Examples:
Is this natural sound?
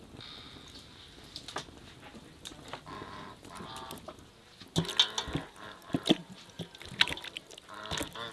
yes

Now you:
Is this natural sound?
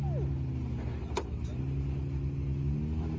yes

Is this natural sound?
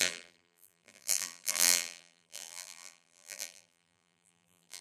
no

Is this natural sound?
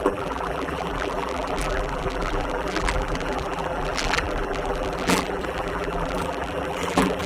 no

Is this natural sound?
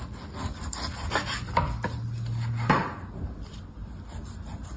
yes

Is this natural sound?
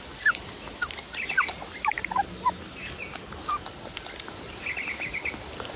yes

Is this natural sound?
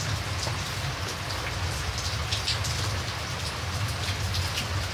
yes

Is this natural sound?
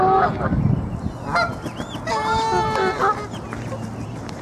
yes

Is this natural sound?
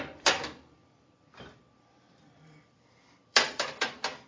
no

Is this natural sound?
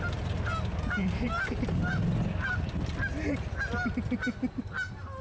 yes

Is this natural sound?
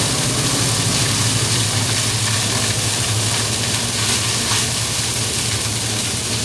yes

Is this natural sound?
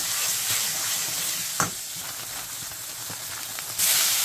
no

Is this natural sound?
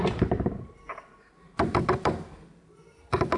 no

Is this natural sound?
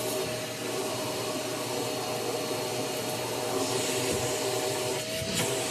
yes